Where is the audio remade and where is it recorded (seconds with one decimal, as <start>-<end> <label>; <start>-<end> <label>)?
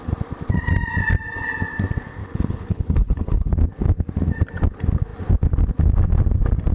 0.0-2.2 recorded; 2.2-3.5 remade; 3.5-6.7 recorded